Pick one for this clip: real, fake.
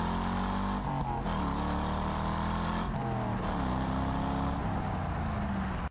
real